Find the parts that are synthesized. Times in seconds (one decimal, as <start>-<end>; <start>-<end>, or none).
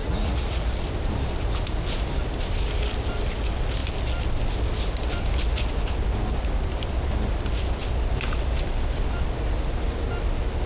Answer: 0.0-0.7